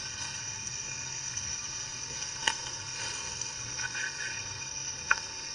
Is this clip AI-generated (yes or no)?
yes